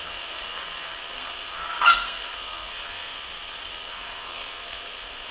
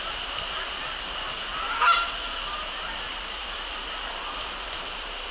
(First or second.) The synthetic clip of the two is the first